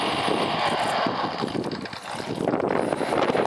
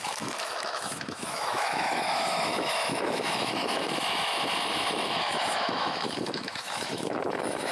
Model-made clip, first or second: second